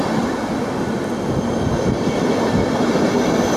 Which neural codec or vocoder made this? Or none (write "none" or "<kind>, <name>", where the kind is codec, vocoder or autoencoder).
none